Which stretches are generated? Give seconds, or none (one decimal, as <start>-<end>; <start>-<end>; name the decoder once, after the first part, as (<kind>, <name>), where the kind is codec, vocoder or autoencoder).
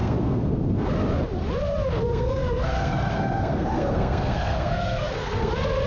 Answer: 0.0-0.9 (codec, SNAC); 2.1-5.5